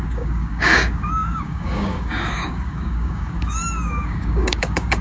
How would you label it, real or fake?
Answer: fake